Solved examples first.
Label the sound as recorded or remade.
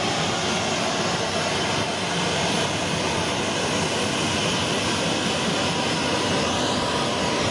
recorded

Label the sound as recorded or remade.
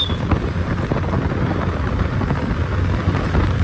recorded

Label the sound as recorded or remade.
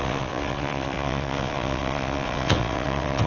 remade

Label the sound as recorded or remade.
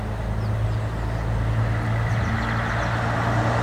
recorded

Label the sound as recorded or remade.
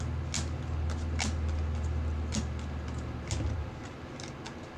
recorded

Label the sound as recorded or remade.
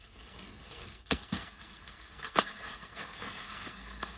remade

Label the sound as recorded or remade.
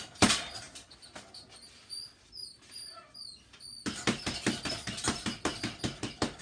recorded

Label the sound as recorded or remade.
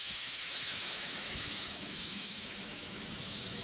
remade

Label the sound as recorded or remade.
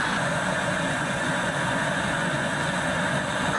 remade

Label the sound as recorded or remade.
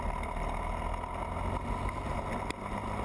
recorded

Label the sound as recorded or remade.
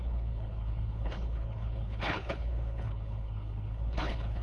remade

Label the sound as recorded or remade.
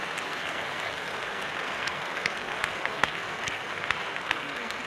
remade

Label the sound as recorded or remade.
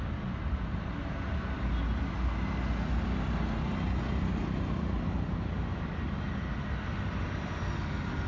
recorded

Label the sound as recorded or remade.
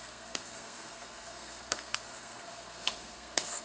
remade